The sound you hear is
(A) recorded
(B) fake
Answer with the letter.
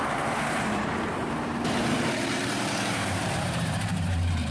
B